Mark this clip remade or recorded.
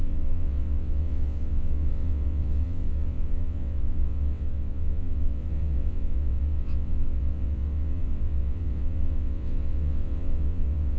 remade